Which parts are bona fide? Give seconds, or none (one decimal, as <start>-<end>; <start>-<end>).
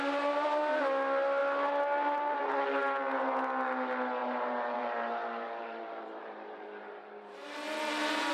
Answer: 0.0-4.2